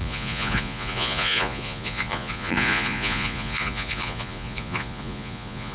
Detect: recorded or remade remade